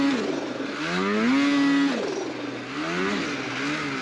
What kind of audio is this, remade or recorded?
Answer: recorded